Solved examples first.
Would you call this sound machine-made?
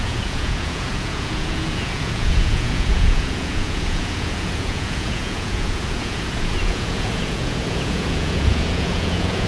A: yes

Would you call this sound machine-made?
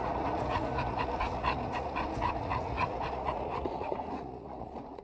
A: yes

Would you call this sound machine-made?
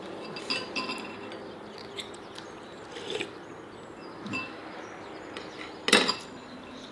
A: no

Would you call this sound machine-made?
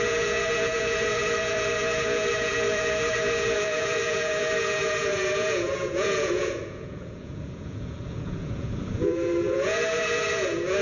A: yes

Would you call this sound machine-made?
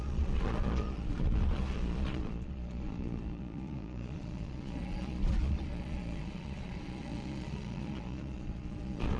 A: yes